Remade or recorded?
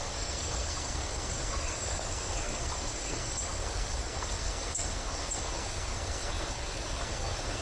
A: remade